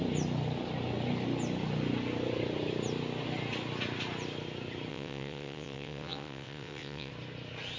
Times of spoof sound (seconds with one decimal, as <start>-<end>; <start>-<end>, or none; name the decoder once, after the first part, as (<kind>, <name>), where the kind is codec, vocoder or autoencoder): 4.9-7.1 (vocoder, WaveNeXt)